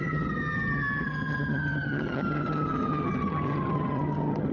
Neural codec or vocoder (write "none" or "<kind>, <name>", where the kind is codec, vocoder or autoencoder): vocoder, HiFi-GAN